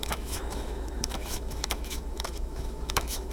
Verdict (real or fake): fake